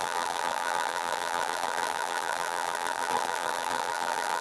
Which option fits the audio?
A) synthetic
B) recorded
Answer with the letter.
A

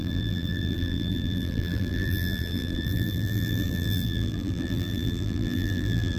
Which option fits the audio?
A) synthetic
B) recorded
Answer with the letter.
A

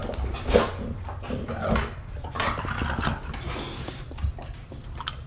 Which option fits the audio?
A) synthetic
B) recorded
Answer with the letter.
B